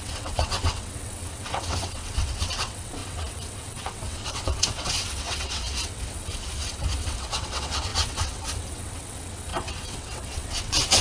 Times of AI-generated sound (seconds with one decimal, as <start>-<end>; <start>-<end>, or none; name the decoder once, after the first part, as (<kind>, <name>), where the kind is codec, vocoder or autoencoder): 0.0-11.0 (vocoder, WaveNeXt)